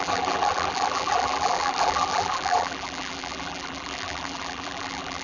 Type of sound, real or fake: fake